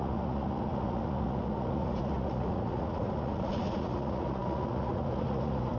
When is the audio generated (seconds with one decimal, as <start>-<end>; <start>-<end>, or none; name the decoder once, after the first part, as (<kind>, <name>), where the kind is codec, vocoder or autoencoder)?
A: 0.0-5.8 (vocoder, Vocos)